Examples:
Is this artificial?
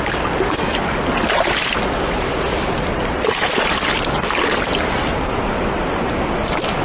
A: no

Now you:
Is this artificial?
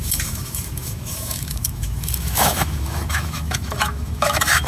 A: yes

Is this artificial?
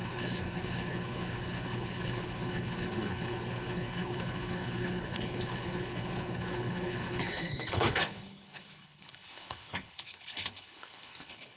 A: yes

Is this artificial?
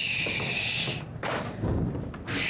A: no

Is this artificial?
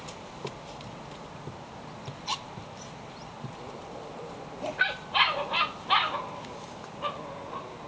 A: no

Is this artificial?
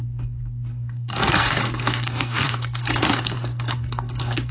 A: yes